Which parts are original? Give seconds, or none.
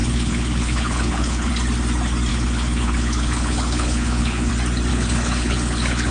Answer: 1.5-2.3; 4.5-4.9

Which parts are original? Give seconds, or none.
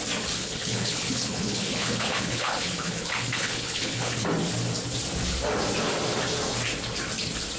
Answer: 0.0-0.4; 4.1-7.6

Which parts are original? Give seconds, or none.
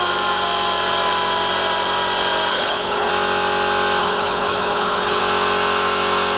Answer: 0.0-2.5; 3.1-4.0; 5.2-6.4